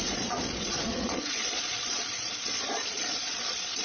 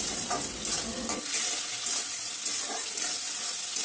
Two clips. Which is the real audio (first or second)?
second